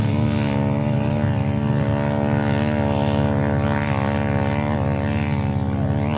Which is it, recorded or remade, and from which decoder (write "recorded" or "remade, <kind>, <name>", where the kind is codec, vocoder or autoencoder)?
recorded